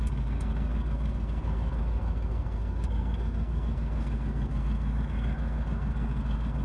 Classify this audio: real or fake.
fake